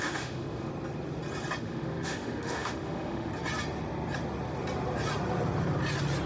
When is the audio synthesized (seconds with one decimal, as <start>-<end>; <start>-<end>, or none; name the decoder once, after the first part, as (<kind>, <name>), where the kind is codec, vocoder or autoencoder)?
0.0-0.7 (autoencoder, DAC-VAE); 1.6-3.3